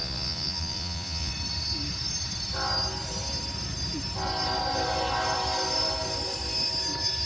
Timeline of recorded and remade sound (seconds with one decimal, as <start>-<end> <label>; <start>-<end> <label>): 0.0-1.3 remade; 1.3-7.3 recorded